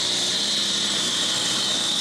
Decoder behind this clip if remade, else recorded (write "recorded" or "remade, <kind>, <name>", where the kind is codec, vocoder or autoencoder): recorded